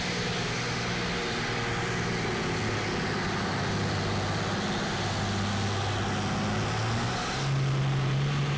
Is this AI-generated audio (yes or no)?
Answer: no